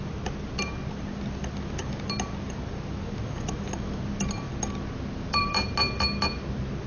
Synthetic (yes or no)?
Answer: no